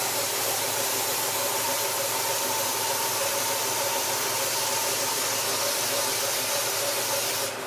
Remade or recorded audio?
recorded